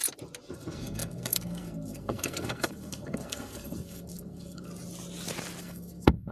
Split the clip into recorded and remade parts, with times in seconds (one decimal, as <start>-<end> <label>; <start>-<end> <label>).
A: 0.0-0.5 recorded; 0.5-4.7 remade; 4.7-5.6 recorded; 5.6-6.3 remade

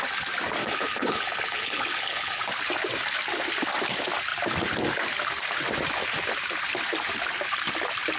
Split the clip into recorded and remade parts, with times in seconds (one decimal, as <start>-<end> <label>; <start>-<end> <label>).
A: 0.0-0.6 recorded; 0.6-2.4 remade; 2.4-8.2 recorded